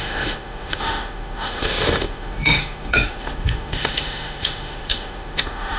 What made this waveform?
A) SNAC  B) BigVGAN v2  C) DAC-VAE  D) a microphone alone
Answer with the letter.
C